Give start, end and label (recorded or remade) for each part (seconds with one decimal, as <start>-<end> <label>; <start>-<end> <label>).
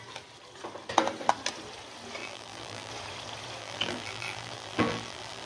0.0-2.2 recorded; 2.2-2.9 remade; 2.9-3.6 recorded; 3.6-5.5 remade